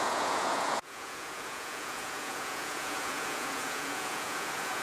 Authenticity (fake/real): fake